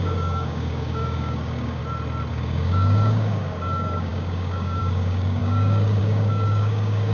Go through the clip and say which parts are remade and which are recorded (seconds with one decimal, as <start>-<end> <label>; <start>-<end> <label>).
0.0-1.8 remade; 1.8-2.3 recorded; 2.3-7.1 remade